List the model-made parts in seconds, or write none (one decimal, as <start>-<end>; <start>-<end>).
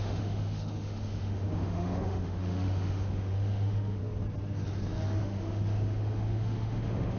0.0-4.0; 5.2-7.2